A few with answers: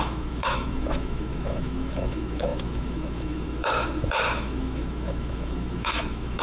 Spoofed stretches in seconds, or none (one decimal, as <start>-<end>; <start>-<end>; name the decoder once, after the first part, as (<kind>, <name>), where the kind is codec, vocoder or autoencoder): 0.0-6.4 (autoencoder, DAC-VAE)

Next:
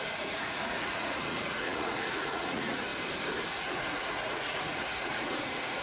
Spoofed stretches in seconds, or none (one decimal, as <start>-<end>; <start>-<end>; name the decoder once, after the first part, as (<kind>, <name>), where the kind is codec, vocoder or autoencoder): 0.0-2.9 (vocoder, Vocos); 3.5-5.8

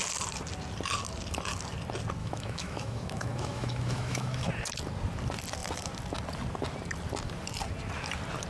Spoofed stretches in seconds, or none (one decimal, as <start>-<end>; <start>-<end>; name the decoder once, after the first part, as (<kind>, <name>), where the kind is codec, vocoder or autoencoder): 2.2-4.5 (autoencoder, DAC-VAE)